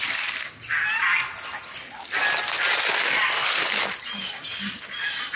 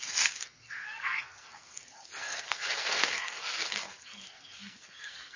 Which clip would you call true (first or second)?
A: first